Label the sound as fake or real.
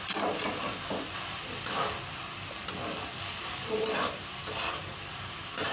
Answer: real